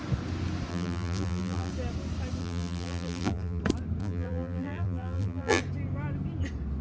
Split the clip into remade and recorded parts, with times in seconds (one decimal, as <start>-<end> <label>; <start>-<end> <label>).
0.0-0.7 recorded; 0.7-1.7 remade; 1.7-2.4 recorded; 2.4-3.6 remade; 3.6-4.0 recorded; 4.0-5.6 remade; 5.6-6.8 recorded